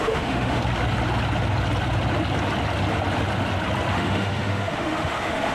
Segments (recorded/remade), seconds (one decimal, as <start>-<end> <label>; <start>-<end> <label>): 0.0-0.6 remade; 0.6-3.9 recorded; 3.9-5.5 remade